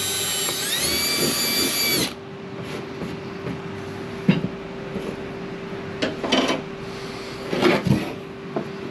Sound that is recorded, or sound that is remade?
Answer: recorded